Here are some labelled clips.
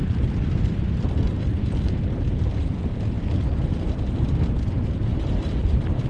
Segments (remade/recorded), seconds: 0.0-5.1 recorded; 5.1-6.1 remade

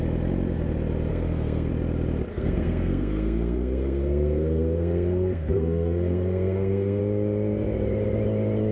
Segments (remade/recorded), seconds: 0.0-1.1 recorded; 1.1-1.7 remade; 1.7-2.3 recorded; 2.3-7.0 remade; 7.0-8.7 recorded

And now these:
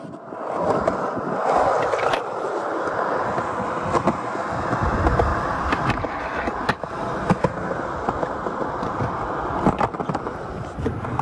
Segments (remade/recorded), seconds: 0.0-11.2 recorded

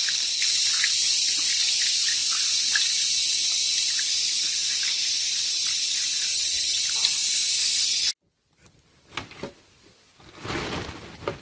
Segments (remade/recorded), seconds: 0.0-6.3 recorded; 6.3-6.8 remade; 6.8-11.4 recorded

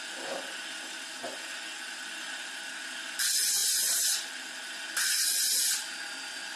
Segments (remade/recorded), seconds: 0.0-6.6 recorded